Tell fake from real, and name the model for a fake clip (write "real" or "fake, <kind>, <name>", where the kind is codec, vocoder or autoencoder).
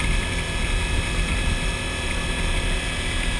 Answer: real